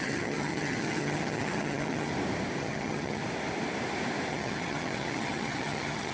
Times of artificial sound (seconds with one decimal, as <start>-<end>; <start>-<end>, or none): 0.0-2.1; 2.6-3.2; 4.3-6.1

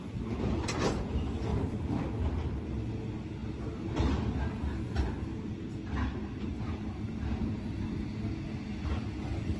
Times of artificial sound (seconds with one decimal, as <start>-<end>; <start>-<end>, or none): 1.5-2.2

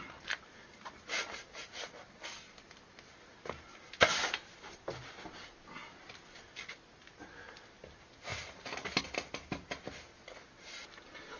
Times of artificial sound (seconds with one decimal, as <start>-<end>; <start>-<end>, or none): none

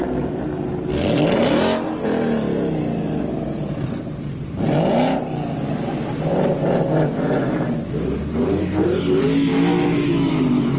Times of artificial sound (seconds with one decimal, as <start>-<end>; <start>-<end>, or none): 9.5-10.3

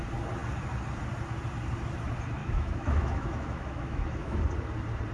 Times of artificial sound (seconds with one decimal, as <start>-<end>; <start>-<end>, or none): 2.4-4.4